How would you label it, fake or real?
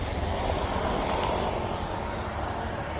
real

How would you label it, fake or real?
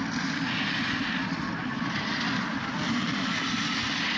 real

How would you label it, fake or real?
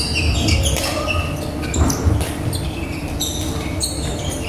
real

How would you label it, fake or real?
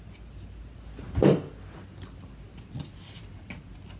real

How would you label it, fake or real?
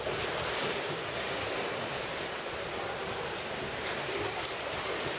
real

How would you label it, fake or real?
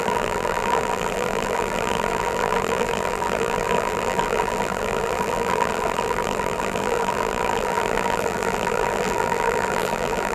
fake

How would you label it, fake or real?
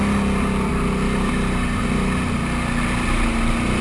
real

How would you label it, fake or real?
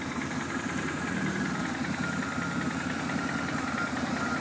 real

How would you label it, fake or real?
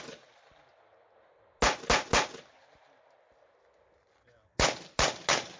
real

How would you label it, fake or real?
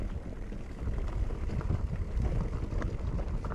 real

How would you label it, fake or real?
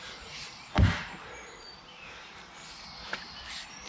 real